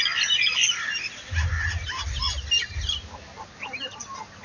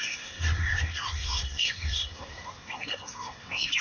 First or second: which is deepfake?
second